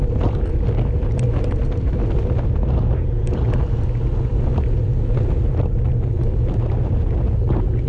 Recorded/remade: recorded